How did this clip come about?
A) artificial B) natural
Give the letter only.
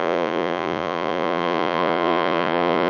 A